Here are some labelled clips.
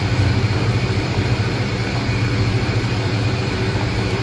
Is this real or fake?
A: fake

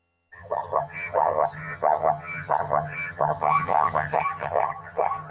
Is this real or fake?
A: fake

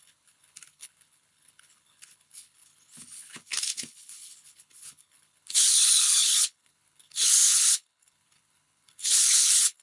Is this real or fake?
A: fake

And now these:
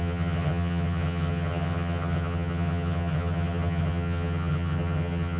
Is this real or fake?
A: fake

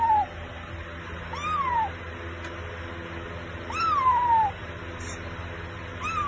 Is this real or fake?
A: real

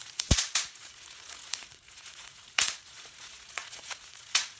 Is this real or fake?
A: fake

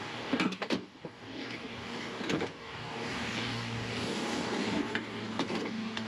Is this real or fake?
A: fake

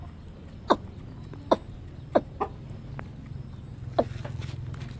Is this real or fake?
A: real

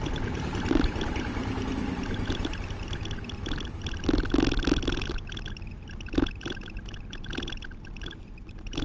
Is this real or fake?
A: real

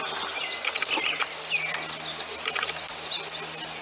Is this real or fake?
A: real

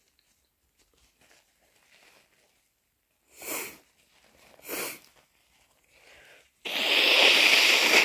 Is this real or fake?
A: real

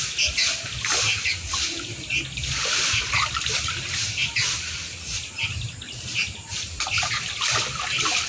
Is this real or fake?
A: real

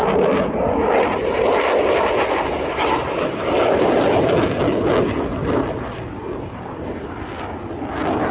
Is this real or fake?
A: real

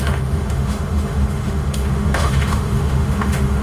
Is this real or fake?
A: fake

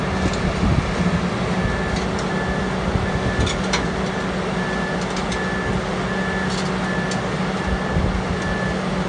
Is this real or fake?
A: real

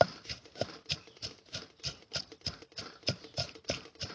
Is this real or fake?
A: real